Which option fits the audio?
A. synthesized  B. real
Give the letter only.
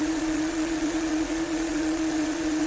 A